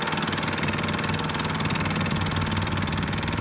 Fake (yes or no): no